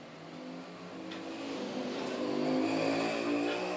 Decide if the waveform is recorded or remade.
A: recorded